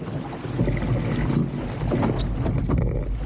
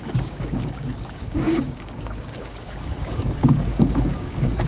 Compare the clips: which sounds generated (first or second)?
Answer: second